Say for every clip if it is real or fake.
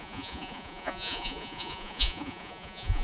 fake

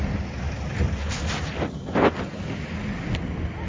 real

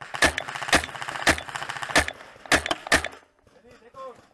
real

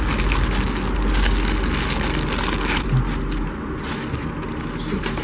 real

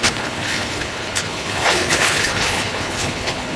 fake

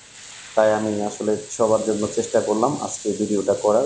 real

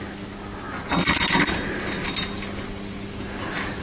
real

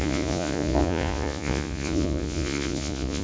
fake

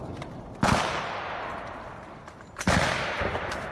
fake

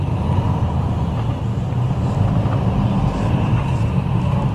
real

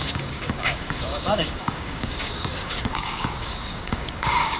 fake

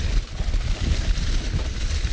real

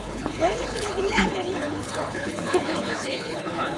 fake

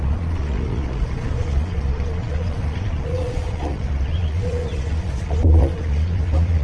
fake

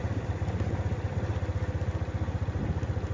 real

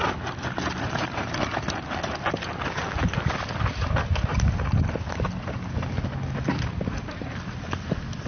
real